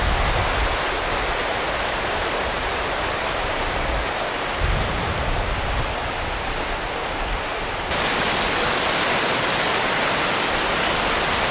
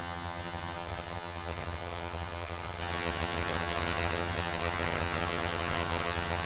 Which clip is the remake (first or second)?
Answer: second